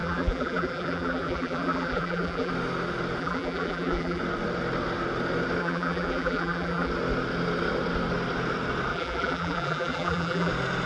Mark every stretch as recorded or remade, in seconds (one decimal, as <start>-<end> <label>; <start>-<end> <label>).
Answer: 0.0-2.5 remade; 2.5-3.2 recorded; 3.2-4.2 remade; 4.2-5.6 recorded; 5.6-6.9 remade; 6.9-8.9 recorded; 8.9-10.5 remade; 10.5-10.9 recorded